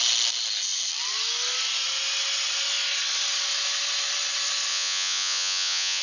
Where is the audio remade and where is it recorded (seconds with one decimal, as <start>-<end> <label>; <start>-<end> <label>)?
0.0-4.7 recorded; 4.7-6.0 remade